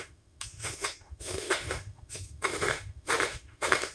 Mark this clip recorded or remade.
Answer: remade